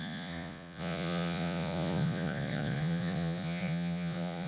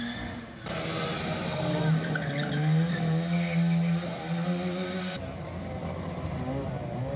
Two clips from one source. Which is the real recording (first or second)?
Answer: second